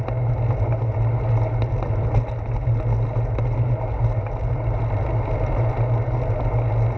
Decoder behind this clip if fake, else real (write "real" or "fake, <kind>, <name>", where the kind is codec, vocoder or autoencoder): real